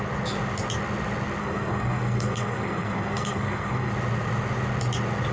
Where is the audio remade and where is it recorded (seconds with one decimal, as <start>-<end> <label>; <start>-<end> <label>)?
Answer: 0.0-1.4 recorded; 1.4-3.9 remade; 3.9-5.3 recorded